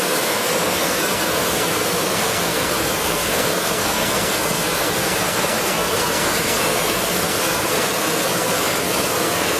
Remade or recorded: remade